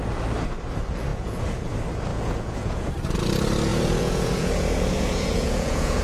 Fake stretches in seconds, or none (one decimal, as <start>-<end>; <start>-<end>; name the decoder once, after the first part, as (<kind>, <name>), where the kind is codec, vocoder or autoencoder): 1.1-1.7 (vocoder, Vocos); 2.1-2.9; 3.7-6.0